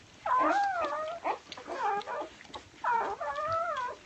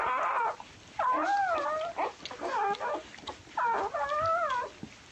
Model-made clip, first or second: first